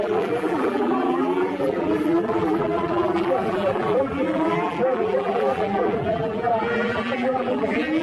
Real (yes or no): no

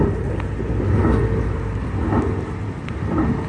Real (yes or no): yes